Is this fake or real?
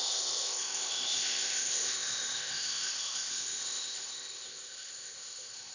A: fake